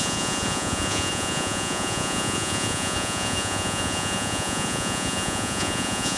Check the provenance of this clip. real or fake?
fake